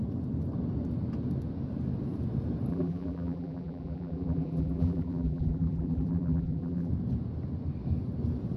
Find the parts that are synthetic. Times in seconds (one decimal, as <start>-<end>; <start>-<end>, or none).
2.7-6.9

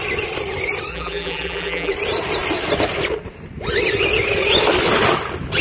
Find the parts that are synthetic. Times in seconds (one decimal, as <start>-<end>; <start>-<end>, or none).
0.9-1.9